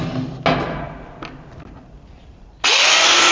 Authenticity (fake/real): real